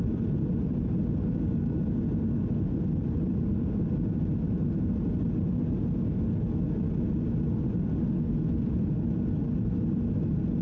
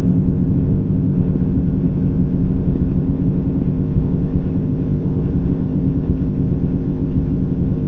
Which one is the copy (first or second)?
second